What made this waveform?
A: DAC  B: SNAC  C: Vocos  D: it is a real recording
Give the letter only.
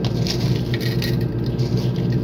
D